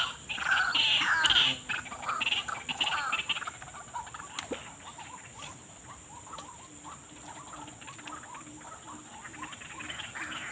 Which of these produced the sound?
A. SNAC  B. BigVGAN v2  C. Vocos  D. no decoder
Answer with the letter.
D